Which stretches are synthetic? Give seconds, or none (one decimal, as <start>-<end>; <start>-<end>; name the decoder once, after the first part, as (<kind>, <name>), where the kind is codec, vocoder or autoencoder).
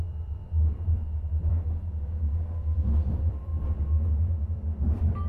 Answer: 0.0-1.5 (vocoder, BigVGAN v2); 3.1-3.5; 4.1-5.3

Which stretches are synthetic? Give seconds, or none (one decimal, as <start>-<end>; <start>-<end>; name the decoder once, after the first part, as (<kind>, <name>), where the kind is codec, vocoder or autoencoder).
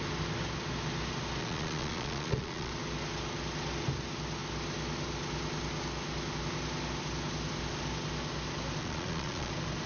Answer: 1.4-2.7 (vocoder, Vocos); 8.8-9.5